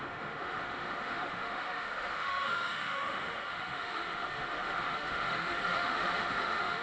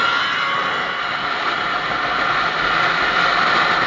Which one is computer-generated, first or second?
first